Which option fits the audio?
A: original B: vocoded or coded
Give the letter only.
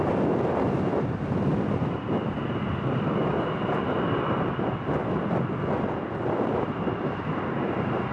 A